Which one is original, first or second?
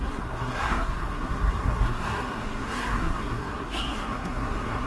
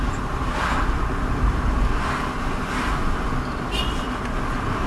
second